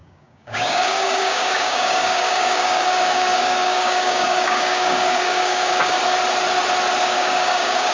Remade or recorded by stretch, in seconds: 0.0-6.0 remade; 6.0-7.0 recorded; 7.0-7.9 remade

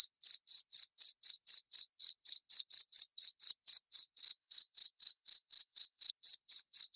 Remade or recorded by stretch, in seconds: 0.0-4.2 recorded; 4.2-6.1 remade; 6.1-7.0 recorded

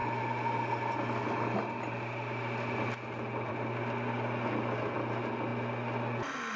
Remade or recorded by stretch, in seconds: 0.0-6.6 recorded

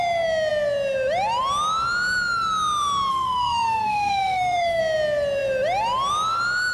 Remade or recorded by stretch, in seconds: 0.0-3.1 recorded; 3.1-4.8 remade; 4.8-6.7 recorded

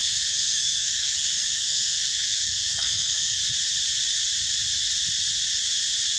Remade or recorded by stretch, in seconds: 0.0-3.4 remade; 3.4-6.2 recorded

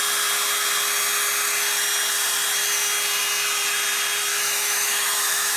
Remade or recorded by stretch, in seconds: 0.0-4.3 recorded; 4.3-5.6 remade